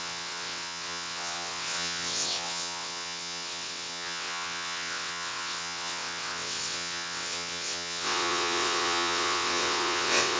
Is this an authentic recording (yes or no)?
no